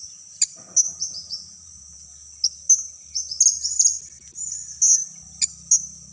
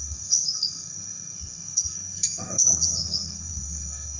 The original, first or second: first